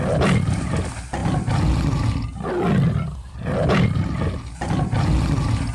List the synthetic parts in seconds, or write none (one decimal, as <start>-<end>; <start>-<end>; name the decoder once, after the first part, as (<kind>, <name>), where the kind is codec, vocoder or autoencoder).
none